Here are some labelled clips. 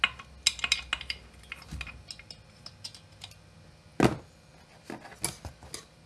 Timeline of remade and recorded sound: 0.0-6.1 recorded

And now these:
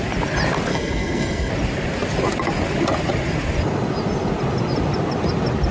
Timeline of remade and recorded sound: 0.0-0.7 recorded; 0.7-1.5 remade; 1.5-5.7 recorded